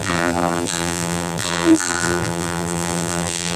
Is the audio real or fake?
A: fake